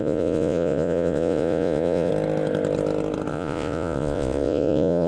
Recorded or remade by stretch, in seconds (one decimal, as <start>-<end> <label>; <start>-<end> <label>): 0.0-2.1 remade; 2.1-3.3 recorded; 3.3-5.1 remade